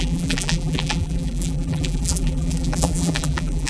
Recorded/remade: remade